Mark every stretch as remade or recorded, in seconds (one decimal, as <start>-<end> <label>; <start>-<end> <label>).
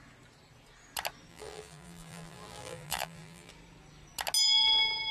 0.0-1.3 recorded; 1.3-3.5 remade; 3.5-5.1 recorded